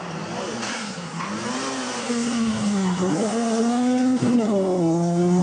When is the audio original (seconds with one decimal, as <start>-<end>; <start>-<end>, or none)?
0.0-0.7; 1.2-2.0